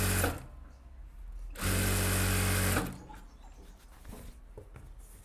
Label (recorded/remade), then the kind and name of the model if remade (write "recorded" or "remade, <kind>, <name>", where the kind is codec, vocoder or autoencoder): recorded